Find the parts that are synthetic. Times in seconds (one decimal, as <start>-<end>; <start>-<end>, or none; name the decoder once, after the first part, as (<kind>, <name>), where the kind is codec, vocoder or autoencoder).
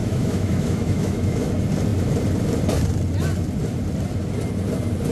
0.0-1.5 (autoencoder, DAC-VAE)